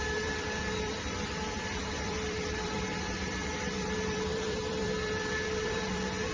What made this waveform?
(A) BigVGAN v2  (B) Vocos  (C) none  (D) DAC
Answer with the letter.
A